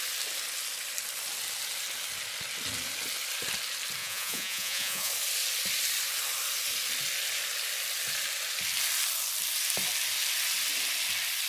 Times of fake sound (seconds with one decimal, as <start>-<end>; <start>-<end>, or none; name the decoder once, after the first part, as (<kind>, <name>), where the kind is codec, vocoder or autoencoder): 4.0-5.1 (vocoder, Vocos)